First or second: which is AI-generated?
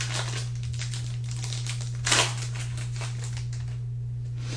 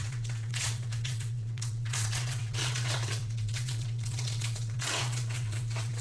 second